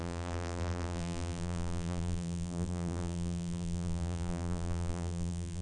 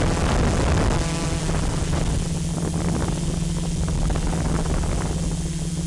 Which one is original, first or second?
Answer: second